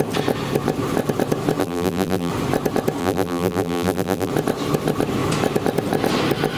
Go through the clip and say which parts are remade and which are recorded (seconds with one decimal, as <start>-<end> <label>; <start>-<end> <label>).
0.0-1.6 recorded; 1.6-2.3 remade; 2.3-3.0 recorded; 3.0-4.3 remade; 4.3-6.6 recorded